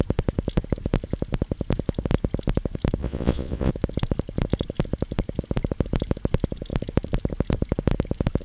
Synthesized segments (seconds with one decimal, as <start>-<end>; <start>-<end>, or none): 3.0-3.7